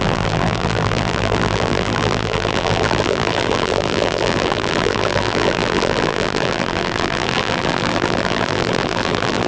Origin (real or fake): fake